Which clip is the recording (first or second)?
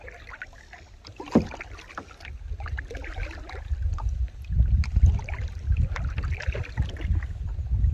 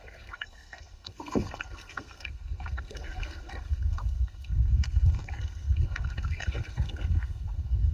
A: first